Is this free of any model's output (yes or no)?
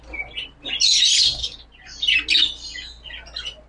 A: yes